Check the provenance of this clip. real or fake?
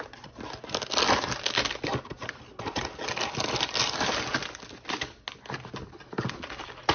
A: real